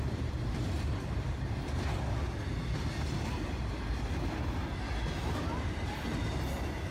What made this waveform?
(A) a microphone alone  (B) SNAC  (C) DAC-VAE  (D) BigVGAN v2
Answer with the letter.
A